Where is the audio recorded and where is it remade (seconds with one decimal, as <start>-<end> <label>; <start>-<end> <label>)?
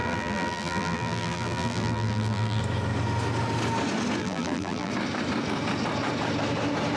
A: 0.0-2.6 remade; 2.6-4.2 recorded; 4.2-4.9 remade; 4.9-7.0 recorded